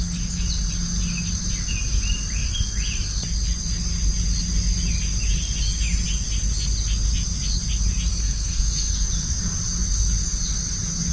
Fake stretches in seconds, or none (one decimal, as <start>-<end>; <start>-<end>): 8.1-9.1